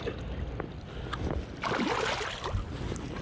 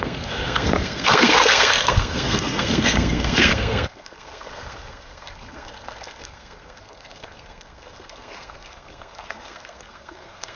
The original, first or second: first